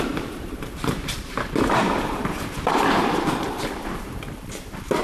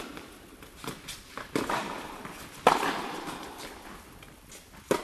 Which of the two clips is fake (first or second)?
first